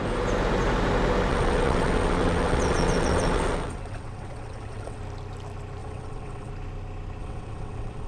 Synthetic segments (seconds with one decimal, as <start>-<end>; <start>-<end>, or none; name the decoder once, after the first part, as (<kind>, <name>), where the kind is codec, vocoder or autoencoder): 1.3-5.0 (vocoder, WaveNeXt); 5.8-6.5; 7.2-8.1